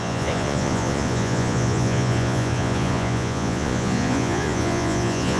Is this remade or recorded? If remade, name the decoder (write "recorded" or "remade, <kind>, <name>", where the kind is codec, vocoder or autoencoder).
remade, vocoder, Vocos